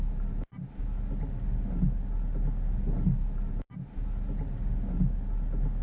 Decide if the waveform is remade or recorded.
recorded